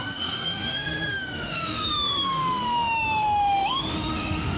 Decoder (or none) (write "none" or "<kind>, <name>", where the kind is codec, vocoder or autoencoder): autoencoder, DAC-VAE